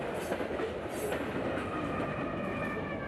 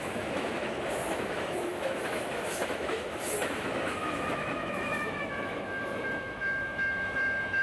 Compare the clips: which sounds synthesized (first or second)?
second